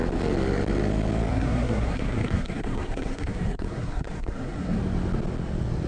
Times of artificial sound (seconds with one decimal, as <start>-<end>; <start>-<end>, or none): 1.3-4.8